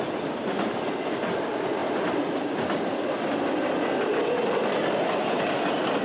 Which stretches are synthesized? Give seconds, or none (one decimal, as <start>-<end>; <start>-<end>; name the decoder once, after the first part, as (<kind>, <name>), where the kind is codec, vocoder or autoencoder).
none

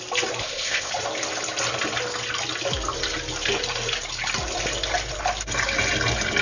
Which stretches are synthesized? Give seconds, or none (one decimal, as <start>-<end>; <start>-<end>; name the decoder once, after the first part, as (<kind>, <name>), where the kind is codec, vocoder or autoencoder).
0.4-0.9 (codec, ZipCodec)